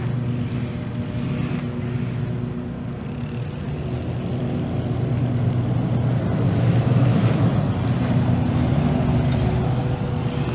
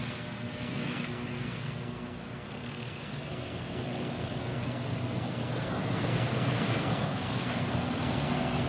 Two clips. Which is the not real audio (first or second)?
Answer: second